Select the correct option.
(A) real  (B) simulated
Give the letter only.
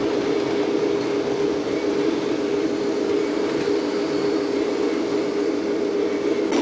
A